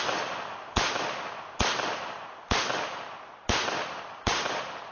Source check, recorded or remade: recorded